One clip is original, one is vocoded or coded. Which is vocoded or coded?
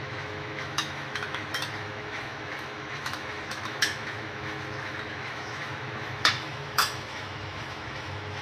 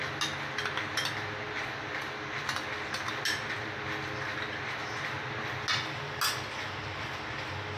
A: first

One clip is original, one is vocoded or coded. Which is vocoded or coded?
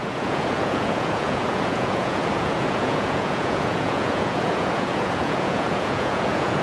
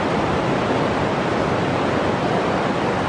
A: first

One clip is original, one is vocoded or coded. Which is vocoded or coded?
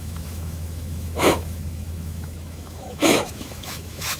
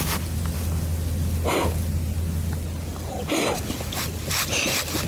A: first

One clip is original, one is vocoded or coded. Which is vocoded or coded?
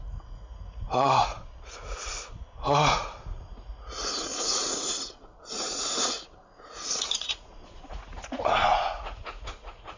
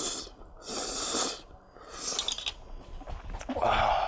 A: first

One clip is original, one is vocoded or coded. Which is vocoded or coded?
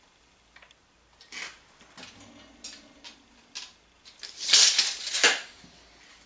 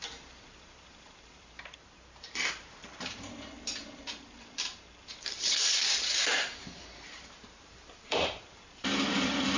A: second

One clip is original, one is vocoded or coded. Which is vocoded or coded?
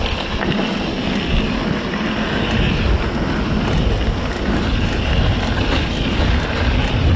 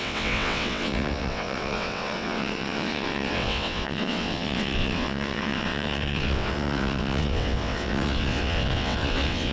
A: second